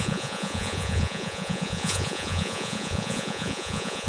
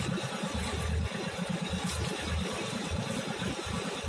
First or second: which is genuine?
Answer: second